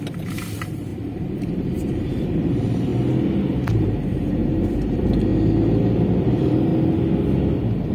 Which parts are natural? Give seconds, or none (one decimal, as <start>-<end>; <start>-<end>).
2.9-3.4; 5.3-6.2; 6.7-7.9